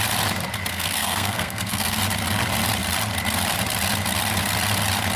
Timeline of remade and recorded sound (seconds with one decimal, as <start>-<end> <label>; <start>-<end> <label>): 0.0-0.7 recorded; 0.7-2.0 remade; 2.0-5.2 recorded